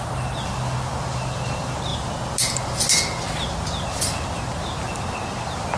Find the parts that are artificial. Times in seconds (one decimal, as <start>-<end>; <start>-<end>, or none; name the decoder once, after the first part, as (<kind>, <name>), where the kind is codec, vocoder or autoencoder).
none